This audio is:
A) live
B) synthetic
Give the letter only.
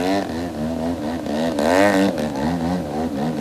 A